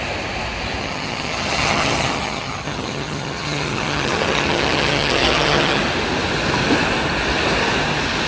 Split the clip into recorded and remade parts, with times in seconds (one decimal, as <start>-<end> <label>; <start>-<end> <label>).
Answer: 0.0-0.8 recorded; 0.8-5.8 remade; 5.8-8.3 recorded